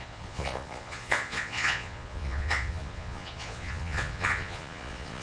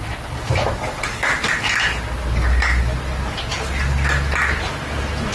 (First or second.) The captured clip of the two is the second